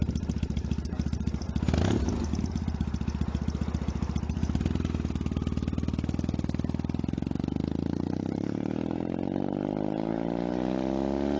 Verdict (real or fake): real